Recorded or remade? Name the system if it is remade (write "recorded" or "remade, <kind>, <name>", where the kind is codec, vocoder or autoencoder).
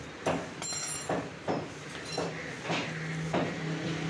recorded